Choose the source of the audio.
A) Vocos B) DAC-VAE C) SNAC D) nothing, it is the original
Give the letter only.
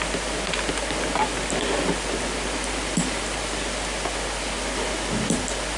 D